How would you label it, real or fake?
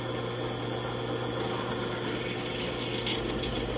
real